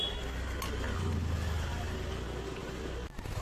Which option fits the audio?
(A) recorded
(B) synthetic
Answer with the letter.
A